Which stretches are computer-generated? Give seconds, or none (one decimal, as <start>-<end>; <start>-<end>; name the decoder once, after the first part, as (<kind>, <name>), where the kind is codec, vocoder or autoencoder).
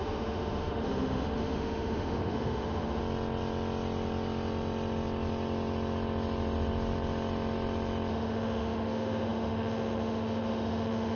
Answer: 0.0-3.0 (autoencoder, DAC-VAE); 8.1-11.2